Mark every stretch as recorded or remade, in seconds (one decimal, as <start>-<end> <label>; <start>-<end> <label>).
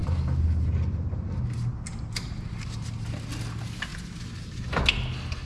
0.0-5.5 recorded